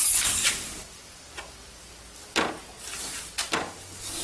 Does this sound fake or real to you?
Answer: real